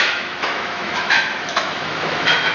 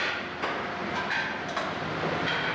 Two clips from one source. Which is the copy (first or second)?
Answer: first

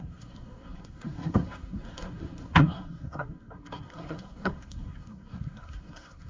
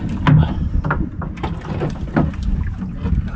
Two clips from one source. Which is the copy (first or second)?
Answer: first